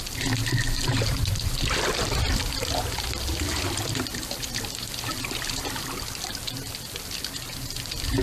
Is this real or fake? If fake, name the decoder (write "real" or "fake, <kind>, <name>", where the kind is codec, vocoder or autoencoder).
real